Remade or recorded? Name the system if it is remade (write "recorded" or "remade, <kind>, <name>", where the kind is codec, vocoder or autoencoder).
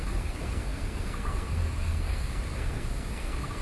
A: remade, codec, SNAC